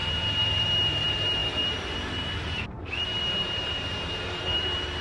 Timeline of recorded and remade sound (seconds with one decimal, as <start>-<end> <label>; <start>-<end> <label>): 0.0-5.0 remade